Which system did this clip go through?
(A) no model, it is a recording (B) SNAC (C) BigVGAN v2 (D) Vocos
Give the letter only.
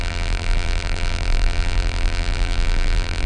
C